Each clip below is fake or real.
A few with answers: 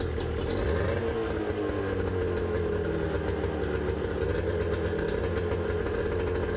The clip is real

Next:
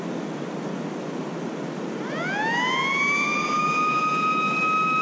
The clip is real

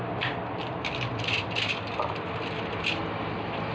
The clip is real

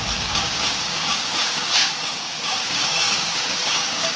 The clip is fake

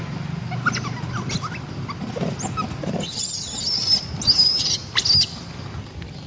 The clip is real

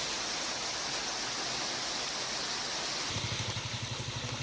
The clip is real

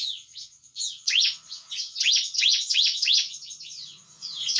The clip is fake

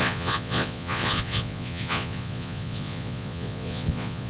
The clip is fake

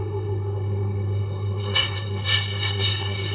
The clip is fake